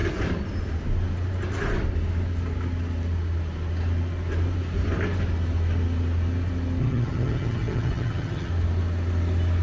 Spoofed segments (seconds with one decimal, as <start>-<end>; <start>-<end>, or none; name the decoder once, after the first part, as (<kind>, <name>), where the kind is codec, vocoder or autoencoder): 6.8-8.5 (vocoder, HiFi-GAN)